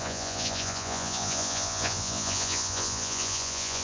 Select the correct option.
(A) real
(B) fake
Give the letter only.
B